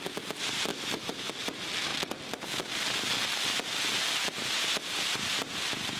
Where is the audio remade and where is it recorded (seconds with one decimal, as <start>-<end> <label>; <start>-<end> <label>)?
0.0-0.7 recorded; 0.7-1.3 remade; 1.3-6.0 recorded